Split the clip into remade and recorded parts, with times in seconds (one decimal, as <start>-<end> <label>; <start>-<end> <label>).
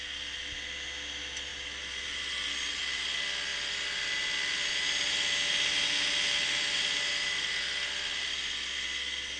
0.0-9.4 recorded